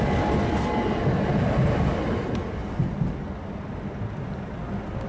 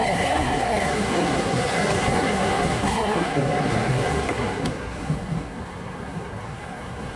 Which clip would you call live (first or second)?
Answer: first